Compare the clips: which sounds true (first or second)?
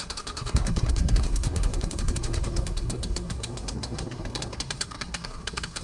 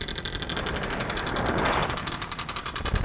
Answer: second